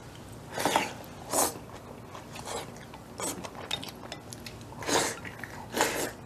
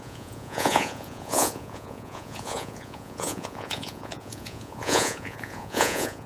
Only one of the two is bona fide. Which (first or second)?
first